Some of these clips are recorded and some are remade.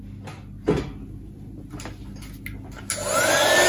recorded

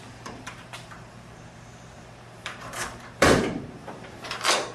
remade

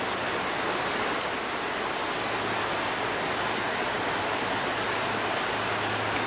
recorded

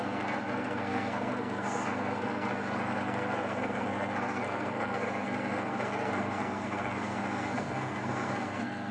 remade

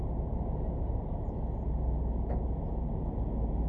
recorded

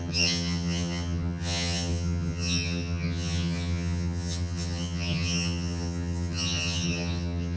remade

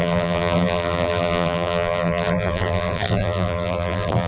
remade